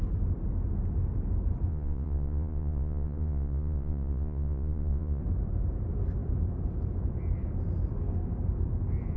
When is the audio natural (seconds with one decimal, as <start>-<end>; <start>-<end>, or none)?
0.0-1.7; 5.2-9.2